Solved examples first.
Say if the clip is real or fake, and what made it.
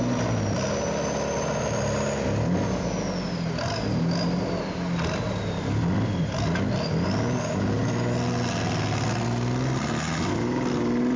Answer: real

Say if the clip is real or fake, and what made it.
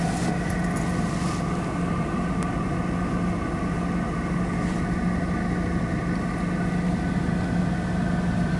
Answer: real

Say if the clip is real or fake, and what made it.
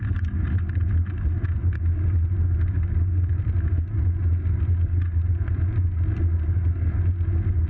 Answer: real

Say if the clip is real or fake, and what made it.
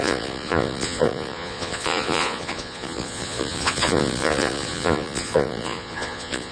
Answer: fake, vocoder, Vocos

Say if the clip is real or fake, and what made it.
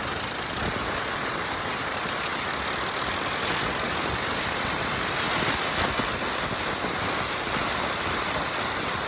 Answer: real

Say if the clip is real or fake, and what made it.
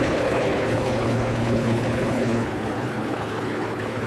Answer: fake, codec, HILCodec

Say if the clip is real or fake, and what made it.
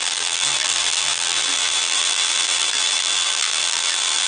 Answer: fake, vocoder, BigVGAN v2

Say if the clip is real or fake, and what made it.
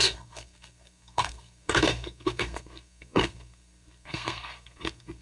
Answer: fake, codec, SNAC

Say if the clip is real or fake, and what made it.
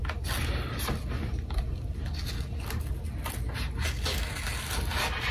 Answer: real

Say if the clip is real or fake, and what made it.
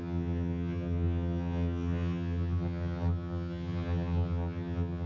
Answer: fake, vocoder, HiFi-GAN